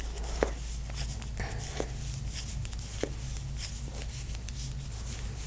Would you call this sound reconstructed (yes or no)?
no